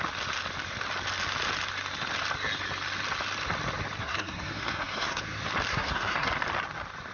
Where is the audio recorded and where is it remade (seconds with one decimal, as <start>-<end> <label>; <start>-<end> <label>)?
0.0-4.0 recorded; 4.0-5.2 remade; 5.2-5.7 recorded; 5.7-6.3 remade; 6.3-7.1 recorded